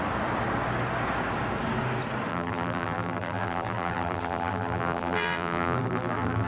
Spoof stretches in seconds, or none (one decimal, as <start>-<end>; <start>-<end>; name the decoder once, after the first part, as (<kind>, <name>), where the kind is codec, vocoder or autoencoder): 2.3-6.5 (vocoder, BigVGAN v2)